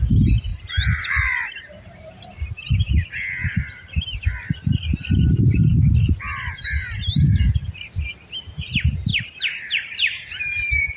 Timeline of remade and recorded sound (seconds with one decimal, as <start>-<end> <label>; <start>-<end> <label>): 0.0-0.5 recorded; 0.5-3.1 remade; 3.1-9.1 recorded; 9.1-11.0 remade